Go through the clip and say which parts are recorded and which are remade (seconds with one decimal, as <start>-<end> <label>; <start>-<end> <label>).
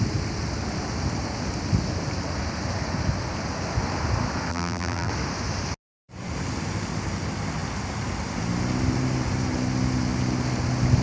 0.0-4.5 recorded; 4.5-5.1 remade; 5.1-11.0 recorded